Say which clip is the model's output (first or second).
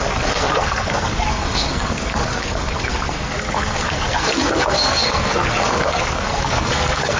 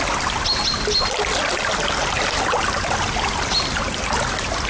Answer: first